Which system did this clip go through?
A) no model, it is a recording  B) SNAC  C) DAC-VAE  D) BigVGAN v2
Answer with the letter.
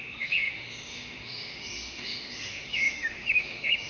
C